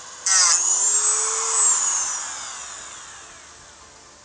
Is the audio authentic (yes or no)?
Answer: yes